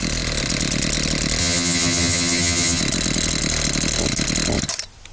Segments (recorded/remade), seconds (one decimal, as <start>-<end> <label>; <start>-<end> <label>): 0.0-1.4 recorded; 1.4-2.8 remade; 2.8-5.1 recorded